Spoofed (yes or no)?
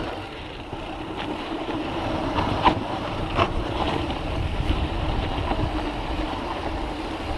yes